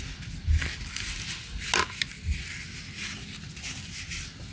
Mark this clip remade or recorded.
recorded